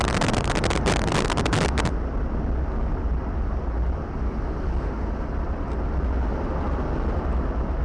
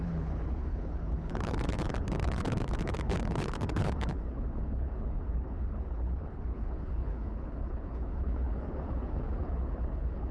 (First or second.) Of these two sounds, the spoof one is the second